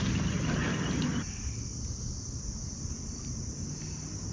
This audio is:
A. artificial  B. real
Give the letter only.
B